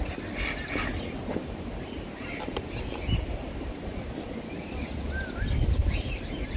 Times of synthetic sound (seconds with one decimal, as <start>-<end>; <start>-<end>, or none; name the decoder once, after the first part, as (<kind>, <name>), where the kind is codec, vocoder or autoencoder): 1.3-3.9 (vocoder, BigVGAN v2); 5.8-6.6